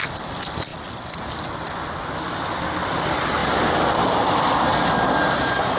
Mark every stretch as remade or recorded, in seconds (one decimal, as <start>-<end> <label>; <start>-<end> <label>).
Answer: 0.0-5.8 recorded